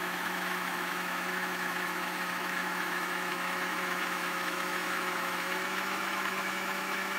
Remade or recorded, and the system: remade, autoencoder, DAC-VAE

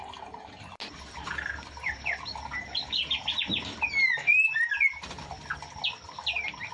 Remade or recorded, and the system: recorded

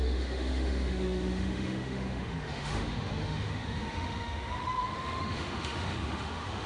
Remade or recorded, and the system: remade, autoencoder, DAC-VAE